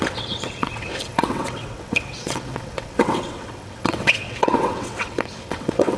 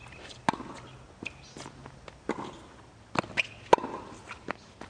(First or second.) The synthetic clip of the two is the first